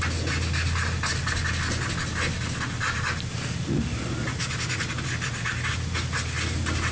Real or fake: real